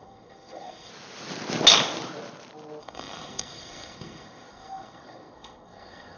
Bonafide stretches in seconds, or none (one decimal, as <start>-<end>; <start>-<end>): 0.9-2.8